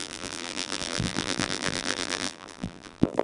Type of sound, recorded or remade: remade